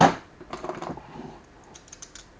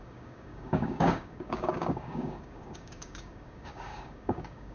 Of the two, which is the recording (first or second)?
first